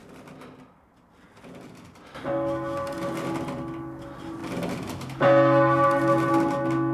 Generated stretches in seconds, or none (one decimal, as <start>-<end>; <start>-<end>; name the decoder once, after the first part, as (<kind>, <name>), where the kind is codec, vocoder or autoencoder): none

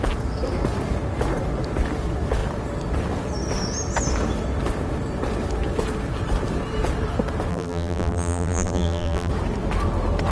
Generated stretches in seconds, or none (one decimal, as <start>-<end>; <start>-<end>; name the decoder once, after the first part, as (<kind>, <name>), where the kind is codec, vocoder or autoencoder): 7.5-9.3 (vocoder, BigVGAN v2)

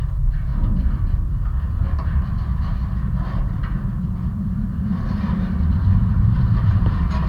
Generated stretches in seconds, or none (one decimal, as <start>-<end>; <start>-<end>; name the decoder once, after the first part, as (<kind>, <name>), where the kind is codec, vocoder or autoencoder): 0.0-0.5 (vocoder, BigVGAN v2); 1.8-2.5; 6.1-7.3

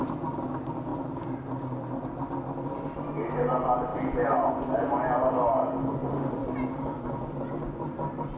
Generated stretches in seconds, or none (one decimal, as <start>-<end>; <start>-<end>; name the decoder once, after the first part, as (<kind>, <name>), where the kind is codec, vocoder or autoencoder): 0.9-1.8 (vocoder, BigVGAN v2)

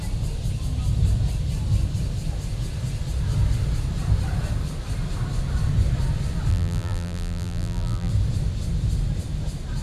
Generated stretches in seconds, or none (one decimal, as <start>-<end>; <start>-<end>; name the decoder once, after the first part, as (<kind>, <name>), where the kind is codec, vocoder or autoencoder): 6.5-8.1 (vocoder, BigVGAN v2)

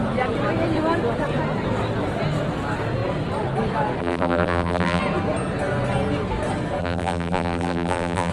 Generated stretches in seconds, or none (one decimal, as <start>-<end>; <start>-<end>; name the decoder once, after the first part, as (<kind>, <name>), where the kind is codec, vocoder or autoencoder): 4.0-5.0 (vocoder, BigVGAN v2); 6.8-8.3

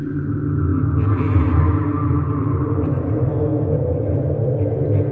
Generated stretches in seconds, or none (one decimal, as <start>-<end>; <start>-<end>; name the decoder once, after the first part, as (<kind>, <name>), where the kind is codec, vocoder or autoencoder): 0.7-3.3 (vocoder, BigVGAN v2)

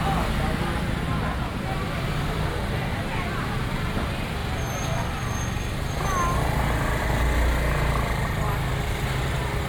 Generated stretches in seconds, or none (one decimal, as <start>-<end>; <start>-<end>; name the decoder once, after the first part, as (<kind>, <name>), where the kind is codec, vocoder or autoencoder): none